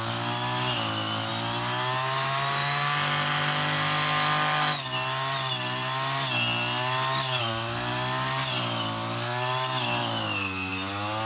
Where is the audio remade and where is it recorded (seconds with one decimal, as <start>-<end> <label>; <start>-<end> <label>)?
0.0-11.3 recorded